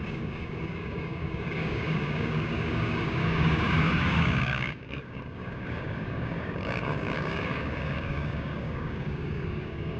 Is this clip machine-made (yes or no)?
yes